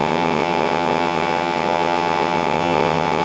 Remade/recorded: remade